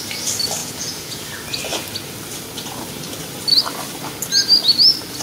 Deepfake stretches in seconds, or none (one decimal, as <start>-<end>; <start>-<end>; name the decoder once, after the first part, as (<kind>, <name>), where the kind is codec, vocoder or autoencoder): 0.6-1.2 (vocoder, Vocos)